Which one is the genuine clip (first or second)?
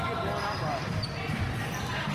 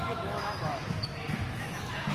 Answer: first